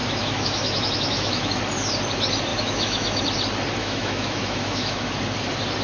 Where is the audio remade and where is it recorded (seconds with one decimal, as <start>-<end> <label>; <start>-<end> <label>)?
0.0-1.6 remade; 1.6-2.5 recorded; 2.5-3.2 remade; 3.2-3.8 recorded; 3.8-5.1 remade; 5.1-5.8 recorded